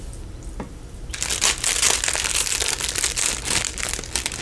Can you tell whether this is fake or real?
real